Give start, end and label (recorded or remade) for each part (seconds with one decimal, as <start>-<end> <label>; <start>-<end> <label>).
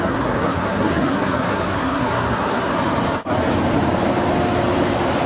0.0-2.7 remade; 2.7-5.3 recorded